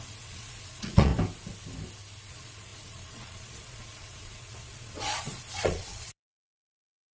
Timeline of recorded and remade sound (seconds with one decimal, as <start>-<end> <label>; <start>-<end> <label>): 0.0-1.1 remade; 1.1-2.3 recorded; 2.3-7.1 remade